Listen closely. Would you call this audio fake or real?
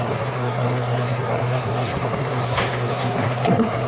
fake